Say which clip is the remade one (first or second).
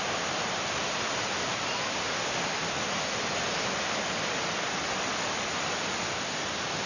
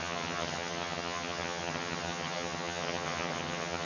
second